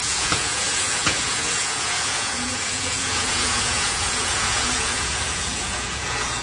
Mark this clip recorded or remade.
remade